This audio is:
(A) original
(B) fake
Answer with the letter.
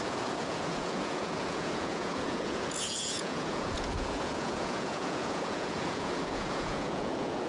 B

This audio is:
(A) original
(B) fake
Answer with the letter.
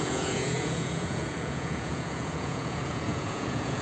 B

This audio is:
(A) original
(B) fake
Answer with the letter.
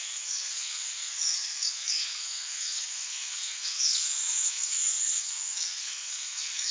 B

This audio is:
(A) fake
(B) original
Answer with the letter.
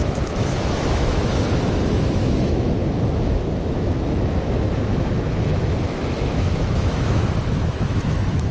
A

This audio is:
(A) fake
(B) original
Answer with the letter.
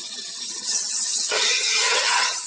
A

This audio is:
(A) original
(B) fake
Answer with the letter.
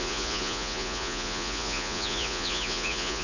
B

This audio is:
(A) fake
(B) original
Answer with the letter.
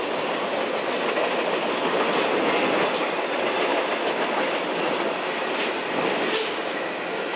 B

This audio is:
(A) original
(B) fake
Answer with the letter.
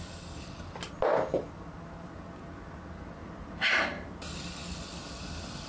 A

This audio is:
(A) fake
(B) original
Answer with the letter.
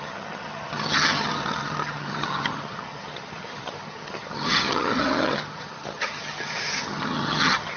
A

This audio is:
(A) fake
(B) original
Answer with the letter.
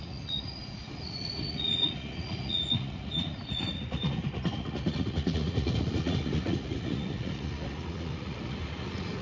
A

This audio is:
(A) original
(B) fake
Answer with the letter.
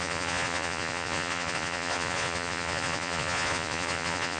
B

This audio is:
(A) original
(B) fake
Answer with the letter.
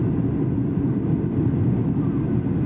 A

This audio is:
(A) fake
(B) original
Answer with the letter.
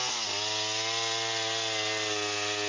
B